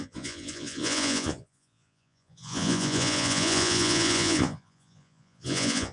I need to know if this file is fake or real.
fake